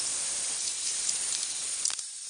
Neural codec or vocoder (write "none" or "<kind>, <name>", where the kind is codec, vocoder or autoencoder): none